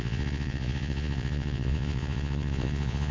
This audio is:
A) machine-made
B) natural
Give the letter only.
A